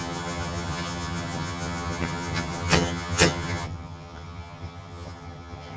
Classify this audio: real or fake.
fake